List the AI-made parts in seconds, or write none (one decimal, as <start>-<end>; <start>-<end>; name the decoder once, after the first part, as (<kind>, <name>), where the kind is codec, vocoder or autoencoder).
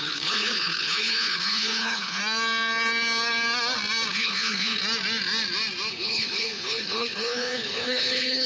0.0-2.2 (codec, HILCodec); 4.1-4.8; 5.9-8.5